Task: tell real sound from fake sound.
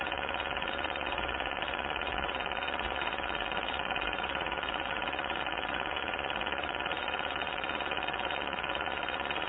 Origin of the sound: fake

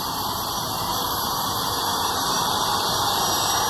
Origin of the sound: real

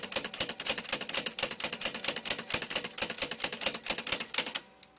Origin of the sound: real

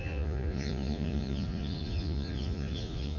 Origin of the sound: fake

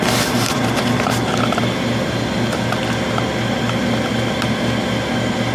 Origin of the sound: real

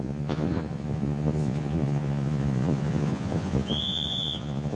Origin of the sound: fake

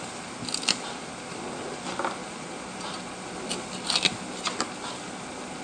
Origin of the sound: real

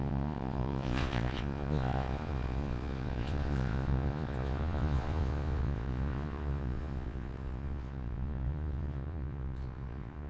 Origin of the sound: fake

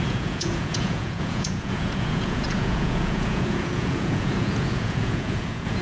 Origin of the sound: fake